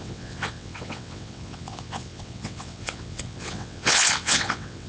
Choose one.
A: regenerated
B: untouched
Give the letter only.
A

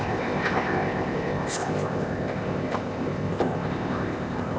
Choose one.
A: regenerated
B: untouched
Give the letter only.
A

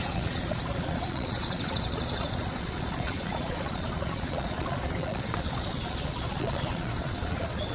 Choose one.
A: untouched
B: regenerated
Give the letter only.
B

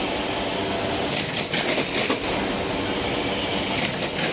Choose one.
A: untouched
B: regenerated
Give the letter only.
A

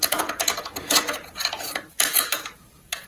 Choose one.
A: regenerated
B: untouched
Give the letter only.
A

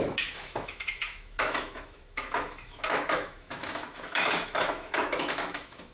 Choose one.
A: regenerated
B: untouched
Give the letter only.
A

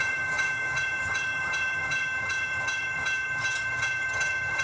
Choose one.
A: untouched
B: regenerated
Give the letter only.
B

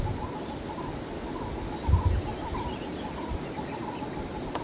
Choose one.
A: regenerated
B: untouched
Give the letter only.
B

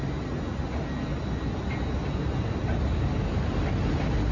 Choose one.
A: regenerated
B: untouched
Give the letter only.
B